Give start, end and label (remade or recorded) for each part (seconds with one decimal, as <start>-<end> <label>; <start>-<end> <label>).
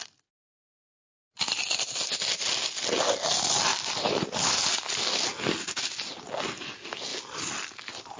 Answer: 0.0-3.7 recorded; 3.7-4.8 remade; 4.8-8.2 recorded